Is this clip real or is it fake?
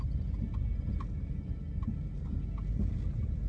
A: real